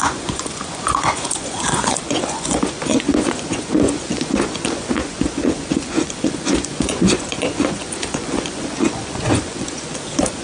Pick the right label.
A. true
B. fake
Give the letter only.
B